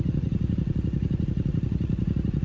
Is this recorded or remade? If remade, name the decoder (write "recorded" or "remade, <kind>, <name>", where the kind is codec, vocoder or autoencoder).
remade, vocoder, Vocos